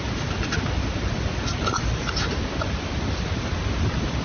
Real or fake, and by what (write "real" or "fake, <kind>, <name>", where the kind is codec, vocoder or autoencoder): real